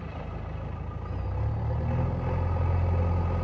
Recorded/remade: recorded